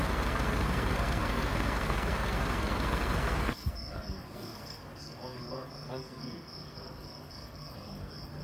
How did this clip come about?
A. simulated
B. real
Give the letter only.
A